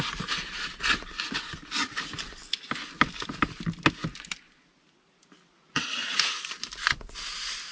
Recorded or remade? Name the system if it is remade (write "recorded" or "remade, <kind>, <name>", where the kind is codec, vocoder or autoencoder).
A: recorded